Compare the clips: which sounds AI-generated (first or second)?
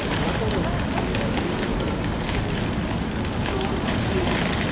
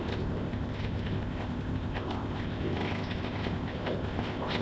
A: second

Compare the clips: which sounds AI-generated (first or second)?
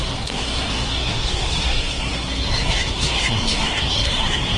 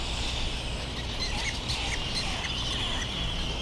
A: first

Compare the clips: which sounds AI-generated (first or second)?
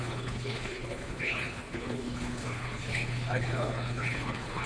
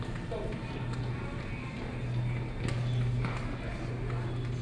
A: first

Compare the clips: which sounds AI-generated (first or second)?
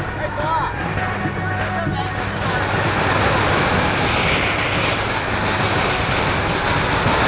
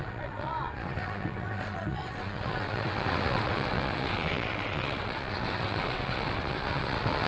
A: second